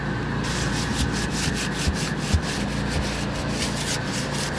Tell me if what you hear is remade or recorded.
recorded